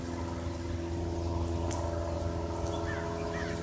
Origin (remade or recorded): recorded